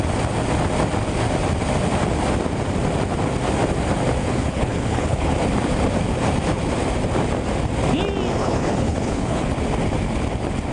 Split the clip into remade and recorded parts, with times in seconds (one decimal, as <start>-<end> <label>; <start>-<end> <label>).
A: 0.0-4.2 recorded; 4.2-5.3 remade; 5.3-8.4 recorded; 8.4-9.5 remade; 9.5-10.7 recorded